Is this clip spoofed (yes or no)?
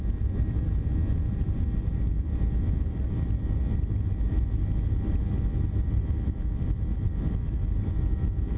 yes